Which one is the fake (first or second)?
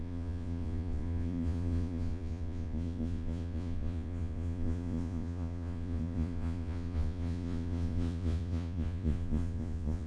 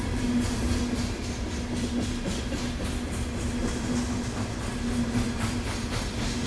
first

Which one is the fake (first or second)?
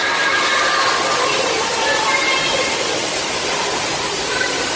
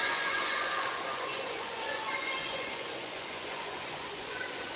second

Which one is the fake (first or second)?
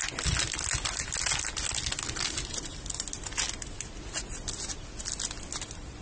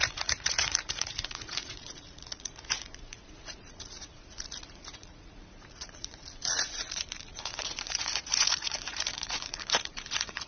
second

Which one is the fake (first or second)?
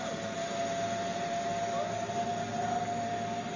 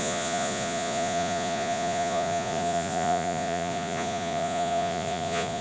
second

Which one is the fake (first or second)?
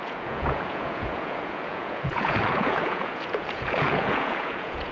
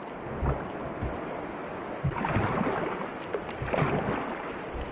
first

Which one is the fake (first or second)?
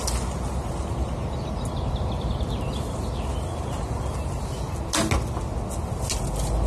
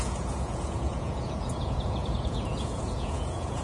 second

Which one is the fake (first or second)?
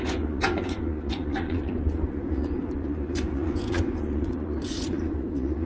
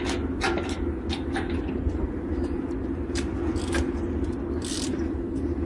first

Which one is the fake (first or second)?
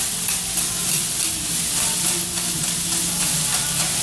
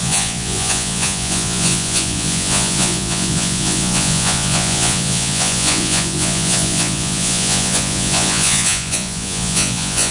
second